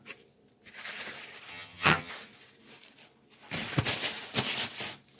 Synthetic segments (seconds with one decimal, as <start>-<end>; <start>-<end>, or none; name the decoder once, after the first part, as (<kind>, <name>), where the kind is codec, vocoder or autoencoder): 1.5-2.1 (vocoder, HiFi-GAN)